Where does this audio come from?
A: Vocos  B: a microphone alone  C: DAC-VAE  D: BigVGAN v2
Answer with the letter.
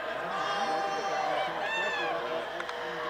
B